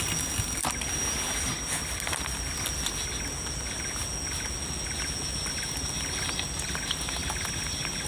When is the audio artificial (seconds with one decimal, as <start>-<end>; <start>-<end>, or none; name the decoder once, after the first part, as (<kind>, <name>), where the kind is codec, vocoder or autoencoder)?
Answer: none